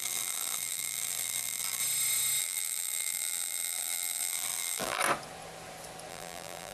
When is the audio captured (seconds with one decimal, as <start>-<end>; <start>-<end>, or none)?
1.8-2.4; 5.0-6.1